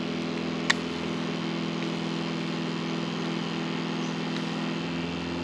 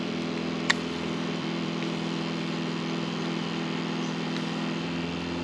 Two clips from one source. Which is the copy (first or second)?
second